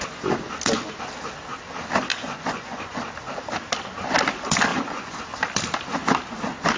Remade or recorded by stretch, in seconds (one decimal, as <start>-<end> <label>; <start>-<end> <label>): 0.0-2.1 recorded; 2.1-3.0 remade; 3.0-4.7 recorded; 4.7-5.2 remade; 5.2-6.8 recorded